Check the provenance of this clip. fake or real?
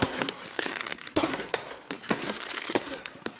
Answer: fake